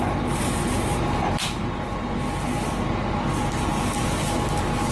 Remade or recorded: recorded